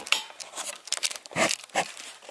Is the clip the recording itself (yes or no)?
no